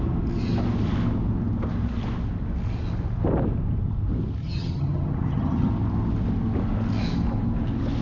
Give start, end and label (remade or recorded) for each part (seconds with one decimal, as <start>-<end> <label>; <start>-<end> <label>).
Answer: 0.0-4.4 recorded; 4.4-5.7 remade; 5.7-8.0 recorded